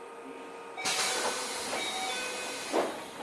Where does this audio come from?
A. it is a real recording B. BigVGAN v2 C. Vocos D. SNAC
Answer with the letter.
A